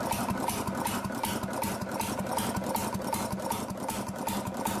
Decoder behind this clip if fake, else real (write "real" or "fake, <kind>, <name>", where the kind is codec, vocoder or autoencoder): real